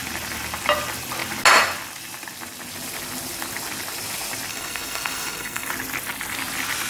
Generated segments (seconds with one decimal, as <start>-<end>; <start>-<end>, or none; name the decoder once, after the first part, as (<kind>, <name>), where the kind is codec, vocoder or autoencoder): 4.5-5.7 (codec, SNAC)